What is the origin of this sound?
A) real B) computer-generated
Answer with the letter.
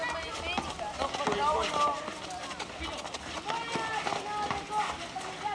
A